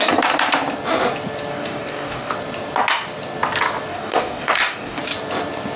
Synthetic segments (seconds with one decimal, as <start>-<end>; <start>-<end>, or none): 1.5-2.3; 3.9-5.0